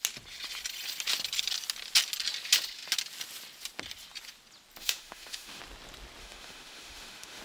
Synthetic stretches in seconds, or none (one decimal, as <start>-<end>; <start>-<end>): 4.8-5.6; 6.2-7.4